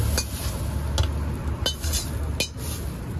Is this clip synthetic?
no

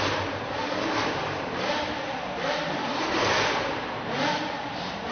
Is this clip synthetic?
yes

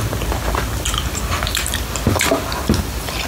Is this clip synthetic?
no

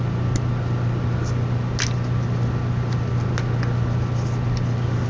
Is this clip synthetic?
no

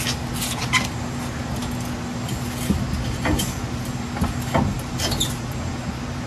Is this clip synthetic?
no